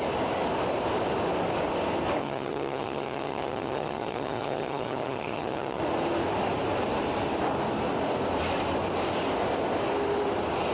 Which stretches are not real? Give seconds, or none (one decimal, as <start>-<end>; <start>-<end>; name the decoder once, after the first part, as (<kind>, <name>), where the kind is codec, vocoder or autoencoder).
2.2-5.8 (vocoder, HiFi-GAN)

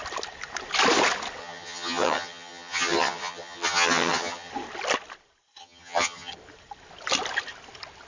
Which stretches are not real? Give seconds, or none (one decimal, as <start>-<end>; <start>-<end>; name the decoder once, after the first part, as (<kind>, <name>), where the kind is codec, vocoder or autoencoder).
1.4-4.5 (vocoder, HiFi-GAN); 5.6-6.3

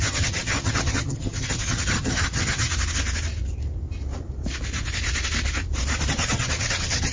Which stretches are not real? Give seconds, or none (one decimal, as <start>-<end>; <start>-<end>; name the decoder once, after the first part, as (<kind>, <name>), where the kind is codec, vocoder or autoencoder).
0.0-2.7 (vocoder, HiFi-GAN); 6.1-7.1